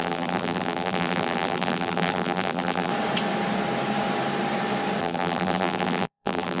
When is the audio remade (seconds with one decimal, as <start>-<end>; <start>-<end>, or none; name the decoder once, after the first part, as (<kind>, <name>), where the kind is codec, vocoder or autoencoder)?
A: 0.0-2.9 (vocoder, BigVGAN v2); 5.0-6.6